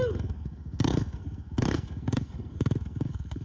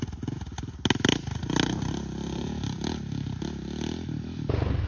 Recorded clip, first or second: second